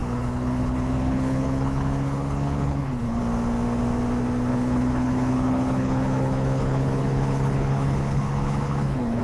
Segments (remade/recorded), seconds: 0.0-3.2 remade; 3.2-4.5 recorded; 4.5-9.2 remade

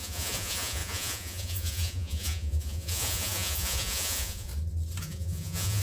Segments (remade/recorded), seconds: 0.0-4.5 remade; 4.5-5.0 recorded; 5.0-5.8 remade

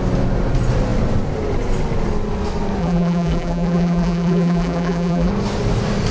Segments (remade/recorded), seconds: 0.0-2.8 recorded; 2.8-5.3 remade; 5.3-6.1 recorded

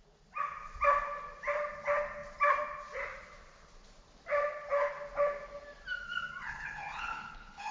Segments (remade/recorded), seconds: 0.0-6.4 recorded; 6.4-7.7 remade

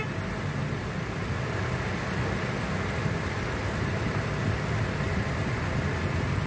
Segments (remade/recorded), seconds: 0.0-6.5 recorded